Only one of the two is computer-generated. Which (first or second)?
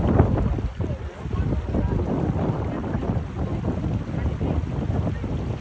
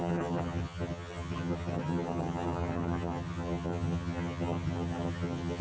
second